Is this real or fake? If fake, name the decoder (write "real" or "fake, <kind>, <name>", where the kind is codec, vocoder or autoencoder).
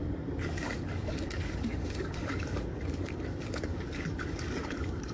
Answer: fake, codec, DAC